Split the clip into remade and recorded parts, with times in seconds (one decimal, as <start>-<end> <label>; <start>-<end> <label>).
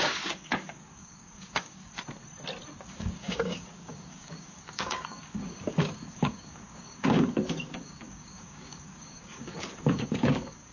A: 0.0-1.9 remade; 1.9-2.7 recorded; 2.7-10.7 remade